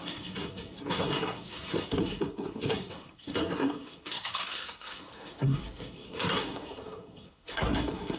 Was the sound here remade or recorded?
remade